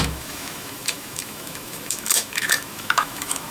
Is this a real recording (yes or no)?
no